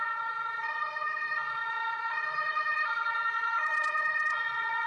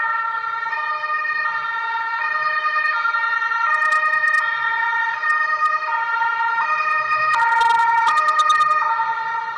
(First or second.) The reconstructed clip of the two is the first